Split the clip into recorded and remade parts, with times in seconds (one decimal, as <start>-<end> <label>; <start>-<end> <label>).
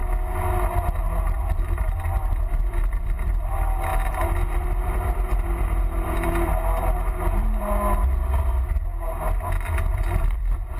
0.0-1.6 recorded; 1.6-8.9 remade; 8.9-9.9 recorded; 9.9-10.8 remade